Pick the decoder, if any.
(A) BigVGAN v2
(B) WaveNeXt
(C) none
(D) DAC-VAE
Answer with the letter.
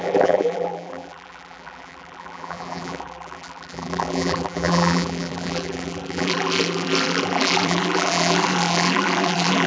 A